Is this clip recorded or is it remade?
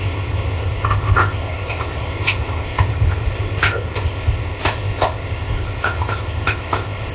remade